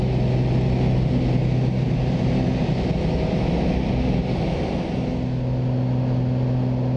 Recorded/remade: recorded